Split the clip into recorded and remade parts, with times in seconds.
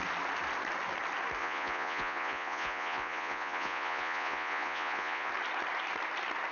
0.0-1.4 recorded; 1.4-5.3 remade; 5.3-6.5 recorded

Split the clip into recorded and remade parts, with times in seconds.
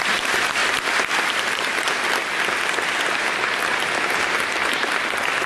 0.0-2.2 remade; 2.2-4.5 recorded; 4.5-5.5 remade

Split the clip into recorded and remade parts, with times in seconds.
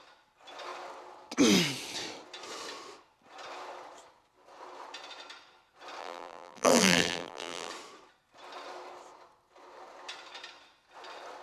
0.0-6.0 recorded; 6.0-7.7 remade; 7.7-11.4 recorded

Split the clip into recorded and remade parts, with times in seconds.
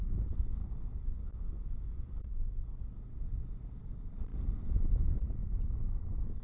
0.0-0.6 remade; 0.6-3.8 recorded; 3.8-5.4 remade; 5.4-6.0 recorded; 6.0-6.4 remade